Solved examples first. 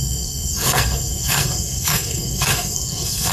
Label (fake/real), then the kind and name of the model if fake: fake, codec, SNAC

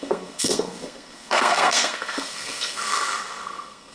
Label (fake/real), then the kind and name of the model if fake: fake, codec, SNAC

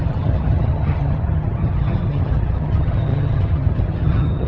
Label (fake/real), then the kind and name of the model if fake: fake, vocoder, HiFi-GAN